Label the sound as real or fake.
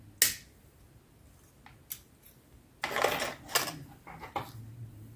real